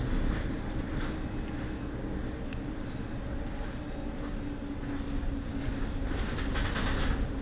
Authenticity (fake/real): real